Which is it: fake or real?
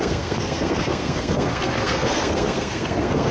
fake